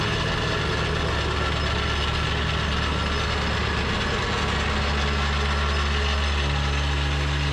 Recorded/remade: recorded